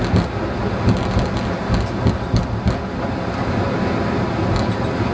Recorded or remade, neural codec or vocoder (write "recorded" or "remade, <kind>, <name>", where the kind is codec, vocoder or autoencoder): recorded